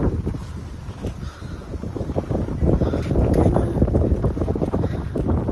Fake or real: fake